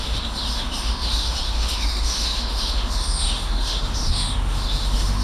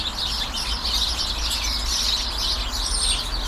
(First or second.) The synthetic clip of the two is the first